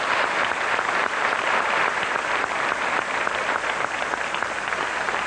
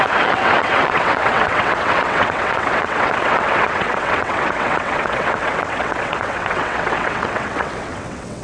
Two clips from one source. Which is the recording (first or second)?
first